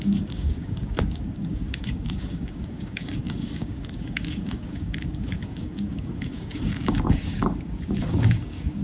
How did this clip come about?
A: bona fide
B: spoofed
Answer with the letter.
B